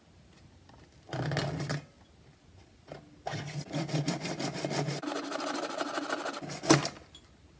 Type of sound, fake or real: real